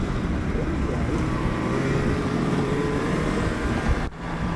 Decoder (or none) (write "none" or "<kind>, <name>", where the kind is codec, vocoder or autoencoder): vocoder, BigVGAN v2